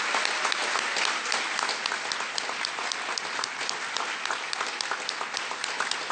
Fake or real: real